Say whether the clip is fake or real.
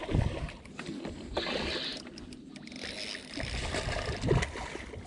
real